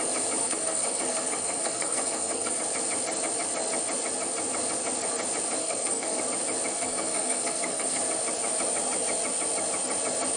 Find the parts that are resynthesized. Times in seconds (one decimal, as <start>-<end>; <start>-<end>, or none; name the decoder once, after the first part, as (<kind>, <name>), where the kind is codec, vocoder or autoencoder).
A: 0.4-2.6 (codec, SNAC); 5.6-6.2; 6.7-8.0